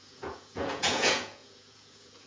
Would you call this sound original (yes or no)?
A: no